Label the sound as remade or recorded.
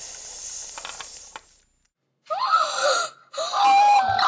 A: recorded